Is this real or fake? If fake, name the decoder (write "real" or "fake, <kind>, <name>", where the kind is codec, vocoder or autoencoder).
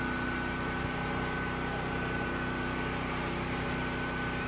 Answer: real